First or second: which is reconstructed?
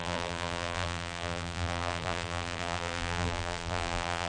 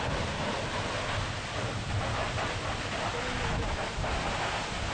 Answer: first